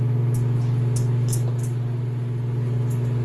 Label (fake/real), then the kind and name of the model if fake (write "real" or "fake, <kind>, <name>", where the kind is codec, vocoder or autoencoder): real